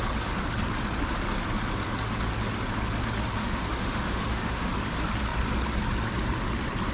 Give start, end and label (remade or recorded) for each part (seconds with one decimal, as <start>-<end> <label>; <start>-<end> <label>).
0.0-3.4 recorded; 3.4-4.7 remade; 4.7-6.9 recorded